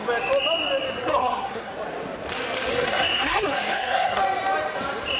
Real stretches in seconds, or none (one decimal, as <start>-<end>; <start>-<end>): 0.0-1.0; 1.7-2.7; 4.2-5.2